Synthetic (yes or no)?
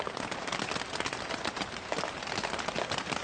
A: no